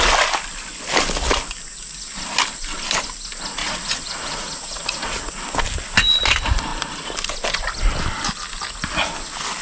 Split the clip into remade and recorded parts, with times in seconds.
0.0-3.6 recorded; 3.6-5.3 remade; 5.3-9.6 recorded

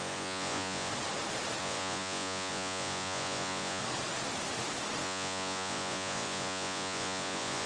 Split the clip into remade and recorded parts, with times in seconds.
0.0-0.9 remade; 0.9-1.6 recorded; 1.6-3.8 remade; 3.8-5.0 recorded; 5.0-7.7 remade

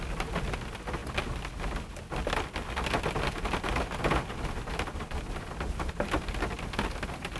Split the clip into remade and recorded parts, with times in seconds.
0.0-7.4 recorded